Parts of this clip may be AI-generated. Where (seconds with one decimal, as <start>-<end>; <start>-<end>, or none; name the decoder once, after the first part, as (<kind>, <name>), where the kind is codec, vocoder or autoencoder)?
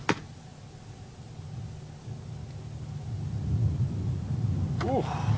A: none